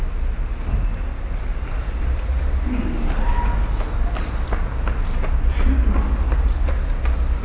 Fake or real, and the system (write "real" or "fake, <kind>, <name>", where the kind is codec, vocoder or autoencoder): real